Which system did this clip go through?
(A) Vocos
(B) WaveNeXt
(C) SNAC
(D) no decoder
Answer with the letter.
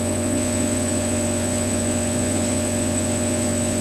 A